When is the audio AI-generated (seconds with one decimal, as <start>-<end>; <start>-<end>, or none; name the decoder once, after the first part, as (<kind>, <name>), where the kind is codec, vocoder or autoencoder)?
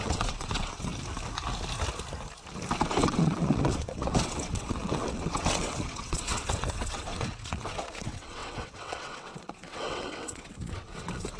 0.0-0.9 (vocoder, WaveNeXt); 3.0-11.4